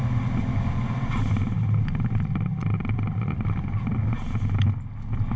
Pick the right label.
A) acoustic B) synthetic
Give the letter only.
A